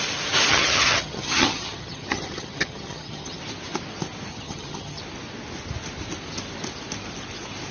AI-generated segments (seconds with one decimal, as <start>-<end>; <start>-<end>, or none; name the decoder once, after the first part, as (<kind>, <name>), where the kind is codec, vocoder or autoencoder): 0.5-3.4 (vocoder, HiFi-GAN); 4.3-5.0